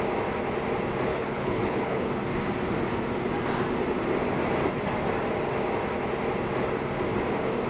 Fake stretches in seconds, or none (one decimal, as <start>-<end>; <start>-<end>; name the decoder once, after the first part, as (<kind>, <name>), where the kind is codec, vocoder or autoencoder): 1.1-2.1 (codec, HILCodec)